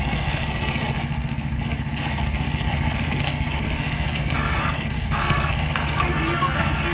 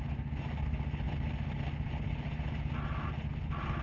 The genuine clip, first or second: second